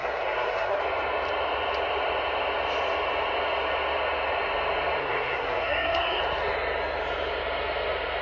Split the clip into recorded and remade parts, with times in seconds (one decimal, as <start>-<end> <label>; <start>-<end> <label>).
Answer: 0.0-0.8 remade; 0.8-5.0 recorded; 5.0-6.2 remade; 6.2-8.2 recorded